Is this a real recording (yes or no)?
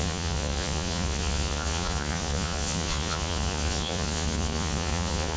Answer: no